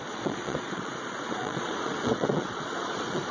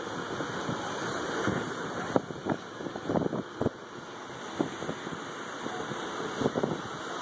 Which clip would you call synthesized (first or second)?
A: first